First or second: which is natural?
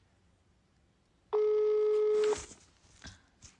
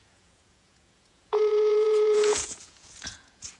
first